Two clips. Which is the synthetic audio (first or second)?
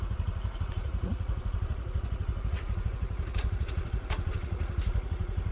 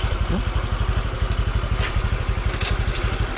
first